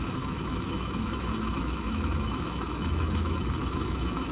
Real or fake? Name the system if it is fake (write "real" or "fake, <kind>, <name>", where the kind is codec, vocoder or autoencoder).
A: fake, autoencoder, DAC-VAE